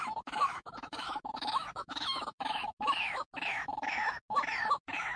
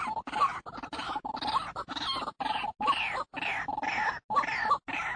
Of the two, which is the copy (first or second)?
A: first